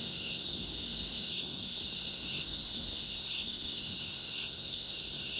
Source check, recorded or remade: remade